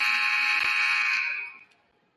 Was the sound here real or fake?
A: real